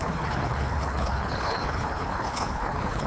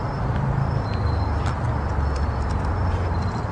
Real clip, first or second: second